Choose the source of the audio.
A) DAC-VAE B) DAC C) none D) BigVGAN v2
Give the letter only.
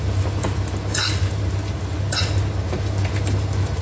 C